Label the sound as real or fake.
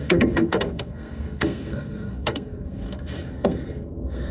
fake